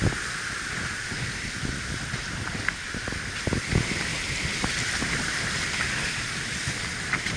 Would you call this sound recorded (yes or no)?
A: yes